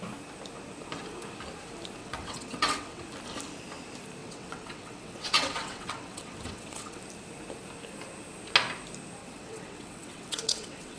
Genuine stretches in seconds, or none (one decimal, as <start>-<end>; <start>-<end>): 0.0-2.0; 3.0-4.2; 7.0-9.2